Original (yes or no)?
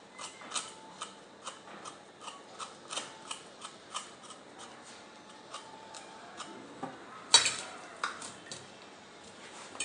yes